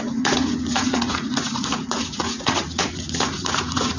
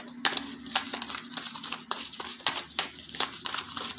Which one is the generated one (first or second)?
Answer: first